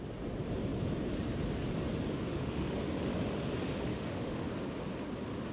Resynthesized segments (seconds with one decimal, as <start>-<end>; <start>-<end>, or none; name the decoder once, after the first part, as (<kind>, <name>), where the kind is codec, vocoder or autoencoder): 2.3-3.2 (autoencoder, DAC-VAE); 3.9-4.5

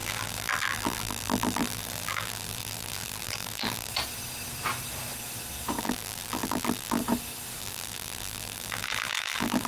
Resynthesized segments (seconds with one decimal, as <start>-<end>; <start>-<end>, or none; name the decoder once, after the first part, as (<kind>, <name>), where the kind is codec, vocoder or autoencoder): 0.0-3.9 (vocoder, BigVGAN v2); 5.8-7.0; 7.6-9.7

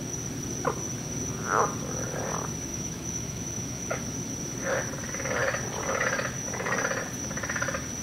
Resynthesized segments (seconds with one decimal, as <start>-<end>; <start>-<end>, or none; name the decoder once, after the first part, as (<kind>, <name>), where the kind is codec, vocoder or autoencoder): 2.7-4.0 (autoencoder, DAC-VAE)

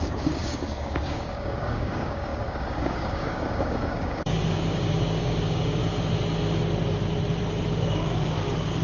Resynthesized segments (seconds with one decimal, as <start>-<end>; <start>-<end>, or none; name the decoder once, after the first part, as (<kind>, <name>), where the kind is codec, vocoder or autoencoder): 0.0-5.8 (codec, DAC); 7.7-8.8